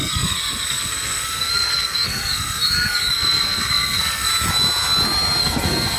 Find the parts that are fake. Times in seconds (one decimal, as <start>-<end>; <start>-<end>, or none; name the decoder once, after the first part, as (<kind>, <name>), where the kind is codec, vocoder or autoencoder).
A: 0.0-4.3 (codec, SNAC); 5.4-6.0